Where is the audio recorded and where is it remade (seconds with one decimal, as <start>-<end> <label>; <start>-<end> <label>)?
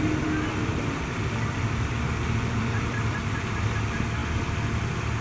0.0-0.7 recorded; 0.7-3.8 remade; 3.8-4.2 recorded; 4.2-5.2 remade